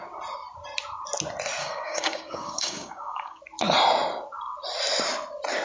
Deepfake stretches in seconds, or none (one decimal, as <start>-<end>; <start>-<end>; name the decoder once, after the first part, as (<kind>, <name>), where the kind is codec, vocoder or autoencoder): 1.6-3.4 (codec, DAC)